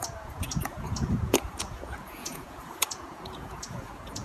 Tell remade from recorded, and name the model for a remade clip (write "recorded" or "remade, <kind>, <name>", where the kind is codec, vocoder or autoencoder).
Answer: remade, vocoder, Vocos